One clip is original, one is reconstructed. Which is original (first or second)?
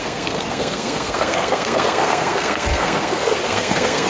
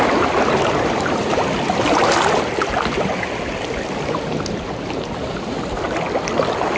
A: second